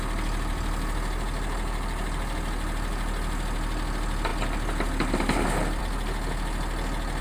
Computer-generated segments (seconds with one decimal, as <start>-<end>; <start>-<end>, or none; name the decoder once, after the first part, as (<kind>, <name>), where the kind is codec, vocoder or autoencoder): none